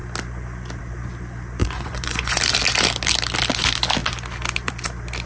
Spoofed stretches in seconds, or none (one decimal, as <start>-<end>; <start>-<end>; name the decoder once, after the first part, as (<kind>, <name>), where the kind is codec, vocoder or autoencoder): 1.6-2.4 (vocoder, Vocos)